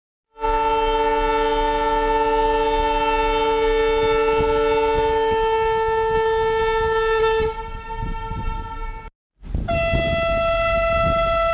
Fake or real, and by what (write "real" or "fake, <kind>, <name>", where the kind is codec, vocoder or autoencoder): real